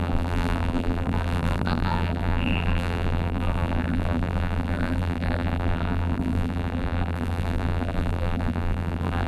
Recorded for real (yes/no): no